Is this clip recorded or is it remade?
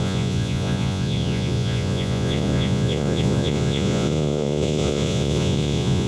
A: remade